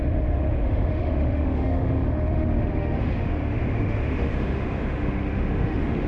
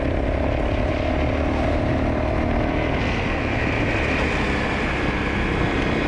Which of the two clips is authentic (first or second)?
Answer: second